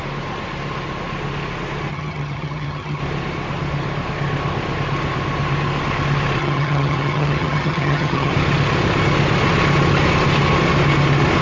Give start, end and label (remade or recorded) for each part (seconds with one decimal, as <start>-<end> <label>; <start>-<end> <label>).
0.0-1.9 recorded; 1.9-3.0 remade; 3.0-6.4 recorded; 6.4-8.3 remade; 8.3-11.4 recorded